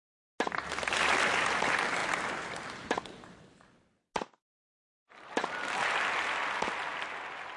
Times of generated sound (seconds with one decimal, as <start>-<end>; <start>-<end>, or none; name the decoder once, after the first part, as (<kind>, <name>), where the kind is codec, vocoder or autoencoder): none